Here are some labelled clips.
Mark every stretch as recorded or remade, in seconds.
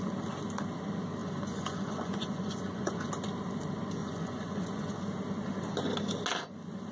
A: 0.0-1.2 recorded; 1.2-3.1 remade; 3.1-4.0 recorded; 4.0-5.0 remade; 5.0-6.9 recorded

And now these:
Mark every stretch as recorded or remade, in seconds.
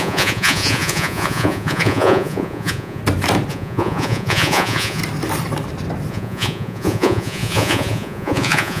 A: 0.0-3.0 remade; 3.0-3.5 recorded; 3.5-5.0 remade; 5.0-6.1 recorded; 6.1-8.8 remade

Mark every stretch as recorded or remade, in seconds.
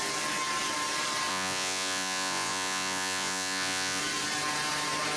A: 0.0-1.3 recorded; 1.3-4.0 remade; 4.0-5.2 recorded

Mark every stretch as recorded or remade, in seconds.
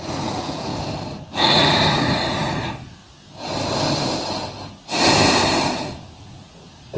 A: 0.0-0.7 remade; 0.7-1.3 recorded; 1.3-3.0 remade; 3.0-5.8 recorded; 5.8-7.0 remade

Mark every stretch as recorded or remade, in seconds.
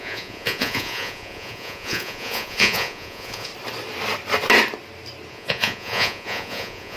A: 0.0-3.5 remade; 3.5-5.3 recorded; 5.3-7.0 remade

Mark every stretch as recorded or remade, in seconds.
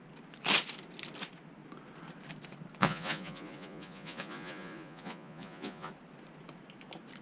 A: 0.0-2.8 recorded; 2.8-5.9 remade; 5.9-7.2 recorded